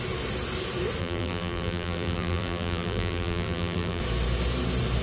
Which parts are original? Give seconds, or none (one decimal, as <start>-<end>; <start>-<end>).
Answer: 0.0-1.0; 4.0-5.0